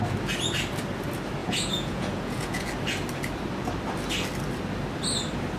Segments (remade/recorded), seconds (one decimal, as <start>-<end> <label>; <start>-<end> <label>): 0.0-1.4 recorded; 1.4-2.7 remade; 2.7-5.6 recorded